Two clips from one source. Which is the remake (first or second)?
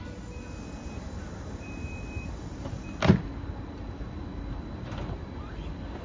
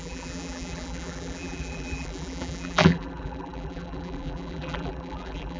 second